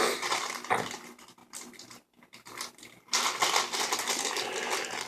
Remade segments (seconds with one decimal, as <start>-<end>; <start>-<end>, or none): none